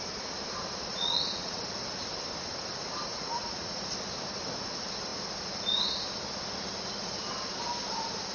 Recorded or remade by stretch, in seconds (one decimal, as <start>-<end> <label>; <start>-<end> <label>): 0.0-0.9 recorded; 0.9-1.6 remade; 1.6-3.1 recorded; 3.1-3.8 remade; 3.8-8.3 recorded